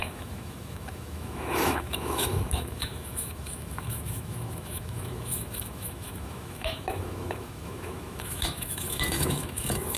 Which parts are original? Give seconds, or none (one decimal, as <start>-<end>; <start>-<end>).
none